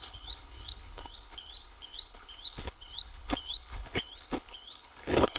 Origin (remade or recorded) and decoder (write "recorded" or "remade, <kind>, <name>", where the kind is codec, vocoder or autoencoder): remade, codec, HILCodec